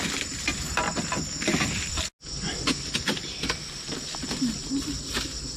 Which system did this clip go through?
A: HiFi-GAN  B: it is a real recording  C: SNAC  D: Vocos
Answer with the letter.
B